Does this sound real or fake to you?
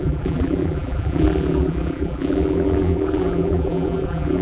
fake